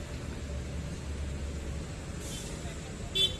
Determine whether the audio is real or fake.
real